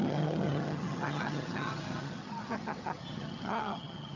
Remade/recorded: remade